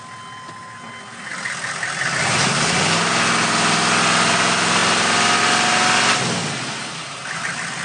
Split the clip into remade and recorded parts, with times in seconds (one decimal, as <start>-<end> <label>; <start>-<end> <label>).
0.0-7.8 recorded